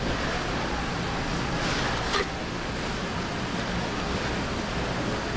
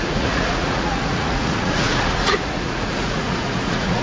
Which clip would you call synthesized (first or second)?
second